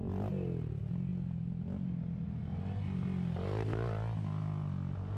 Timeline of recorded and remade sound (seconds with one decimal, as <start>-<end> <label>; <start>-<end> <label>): 0.0-5.2 recorded